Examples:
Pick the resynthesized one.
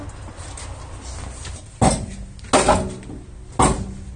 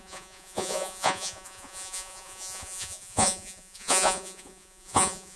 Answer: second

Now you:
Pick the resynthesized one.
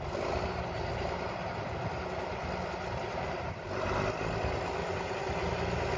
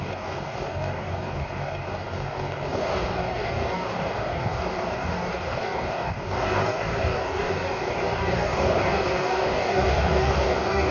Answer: second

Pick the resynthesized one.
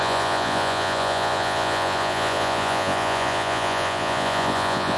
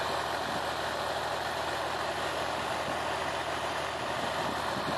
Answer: first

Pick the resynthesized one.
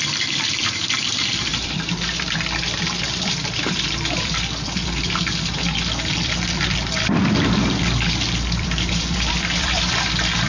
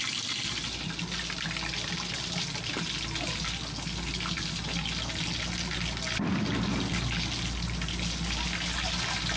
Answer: first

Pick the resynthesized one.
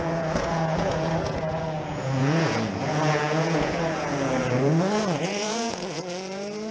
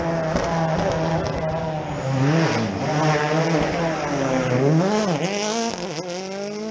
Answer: first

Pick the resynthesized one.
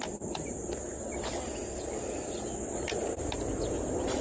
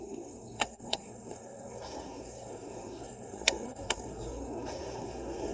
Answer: second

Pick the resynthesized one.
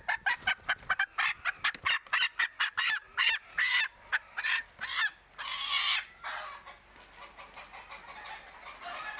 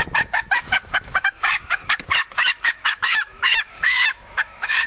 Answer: second